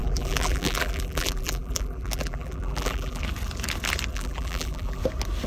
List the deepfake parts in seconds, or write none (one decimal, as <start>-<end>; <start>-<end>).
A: 0.0-3.2; 4.1-5.0